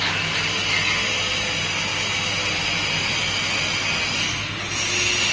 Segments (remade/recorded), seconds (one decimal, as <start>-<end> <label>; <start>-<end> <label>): 0.0-5.3 recorded

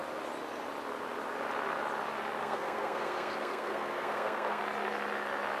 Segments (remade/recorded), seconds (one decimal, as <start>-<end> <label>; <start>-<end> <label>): 0.0-2.4 recorded; 2.4-4.6 remade; 4.6-5.6 recorded

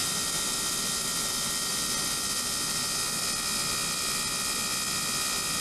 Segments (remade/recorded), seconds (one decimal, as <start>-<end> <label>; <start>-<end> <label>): 0.0-5.6 recorded

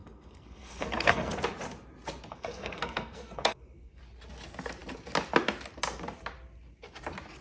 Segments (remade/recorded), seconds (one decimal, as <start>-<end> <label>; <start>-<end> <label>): 0.0-1.3 remade; 1.3-2.3 recorded; 2.3-4.0 remade; 4.0-7.4 recorded

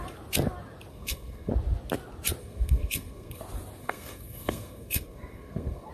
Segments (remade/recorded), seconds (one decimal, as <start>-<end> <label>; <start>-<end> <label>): 0.0-0.9 recorded; 0.9-1.5 remade; 1.5-2.4 recorded; 2.4-3.4 remade; 3.4-3.8 recorded; 3.8-5.9 remade

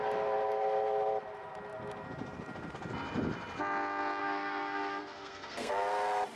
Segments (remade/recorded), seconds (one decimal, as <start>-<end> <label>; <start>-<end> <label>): 0.0-4.2 recorded; 4.2-5.7 remade; 5.7-6.3 recorded